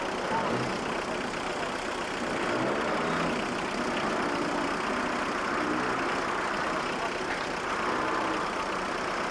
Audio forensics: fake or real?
real